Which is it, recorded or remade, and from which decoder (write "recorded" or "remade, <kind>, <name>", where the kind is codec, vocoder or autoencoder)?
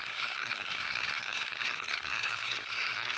remade, codec, SNAC